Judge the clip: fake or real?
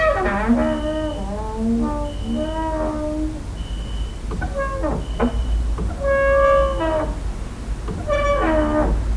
real